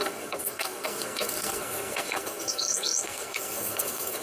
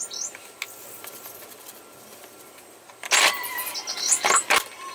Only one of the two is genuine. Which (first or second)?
second